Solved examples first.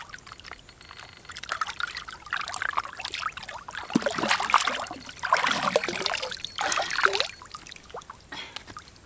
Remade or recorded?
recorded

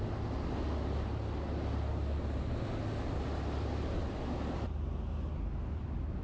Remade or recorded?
recorded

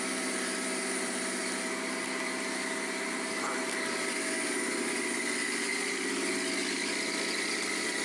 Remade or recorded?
recorded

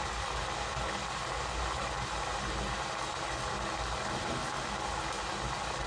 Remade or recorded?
recorded